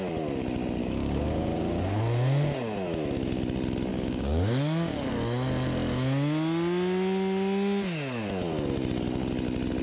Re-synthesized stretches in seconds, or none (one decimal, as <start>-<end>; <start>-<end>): 0.8-2.0; 3.9-5.1